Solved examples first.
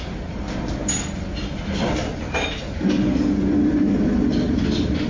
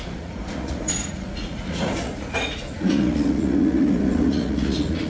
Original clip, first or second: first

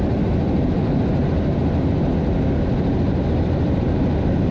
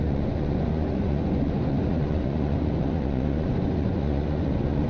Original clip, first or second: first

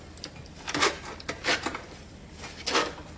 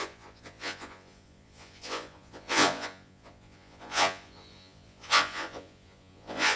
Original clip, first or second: first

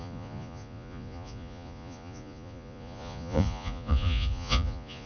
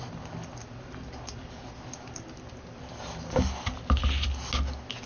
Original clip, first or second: second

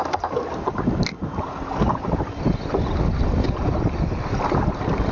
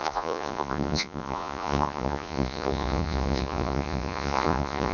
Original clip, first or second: first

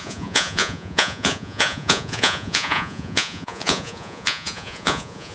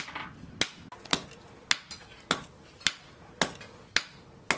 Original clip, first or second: second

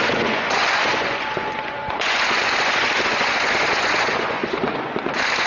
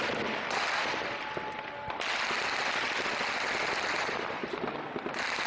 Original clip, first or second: second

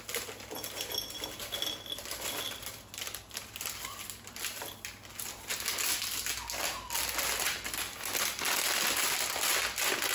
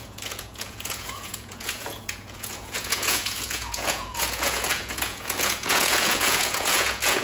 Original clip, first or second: first